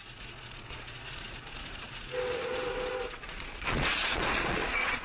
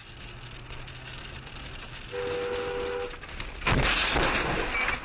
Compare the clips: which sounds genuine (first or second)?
second